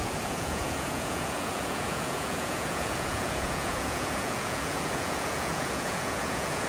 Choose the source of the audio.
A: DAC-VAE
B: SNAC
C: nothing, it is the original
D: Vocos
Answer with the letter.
D